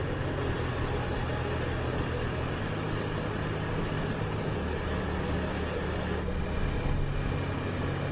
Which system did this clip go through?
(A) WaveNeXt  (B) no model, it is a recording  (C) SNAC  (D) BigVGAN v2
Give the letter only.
B